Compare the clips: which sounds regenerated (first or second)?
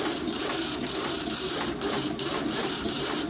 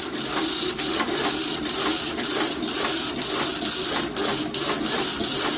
first